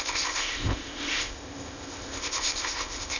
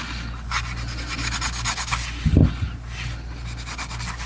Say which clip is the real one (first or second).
second